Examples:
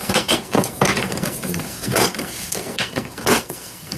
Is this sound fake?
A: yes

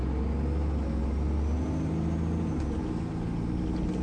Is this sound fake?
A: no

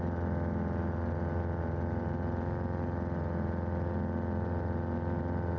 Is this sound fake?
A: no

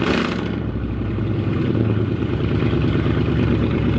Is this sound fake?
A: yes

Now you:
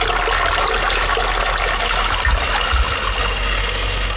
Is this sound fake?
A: no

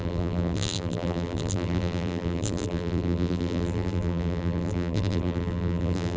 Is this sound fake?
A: yes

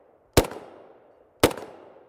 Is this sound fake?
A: no